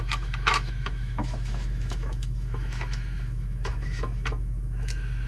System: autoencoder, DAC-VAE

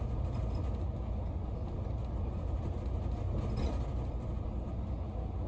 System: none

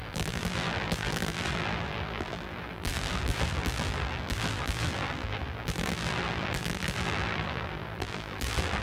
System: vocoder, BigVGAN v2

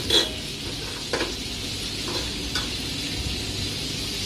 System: none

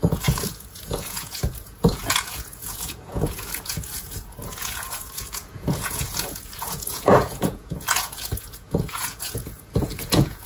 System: vocoder, Vocos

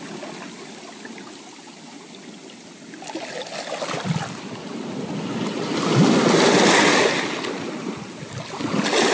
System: none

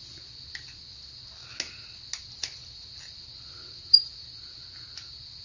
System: none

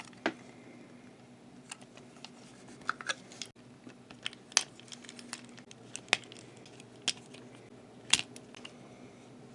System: none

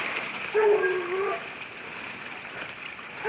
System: none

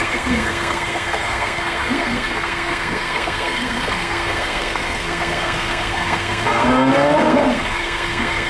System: codec, SNAC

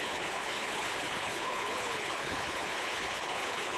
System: codec, HILCodec